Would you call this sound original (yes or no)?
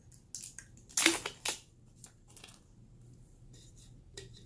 yes